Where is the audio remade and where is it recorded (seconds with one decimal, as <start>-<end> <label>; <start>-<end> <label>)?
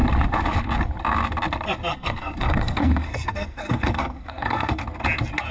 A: 0.0-1.9 recorded; 1.9-4.8 remade; 4.8-5.5 recorded